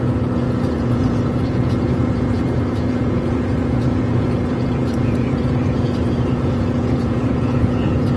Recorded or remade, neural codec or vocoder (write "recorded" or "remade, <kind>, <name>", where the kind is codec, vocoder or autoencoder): remade, vocoder, Vocos